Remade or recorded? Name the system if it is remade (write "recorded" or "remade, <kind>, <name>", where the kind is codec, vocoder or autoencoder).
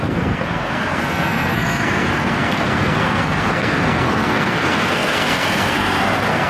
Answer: remade, codec, SNAC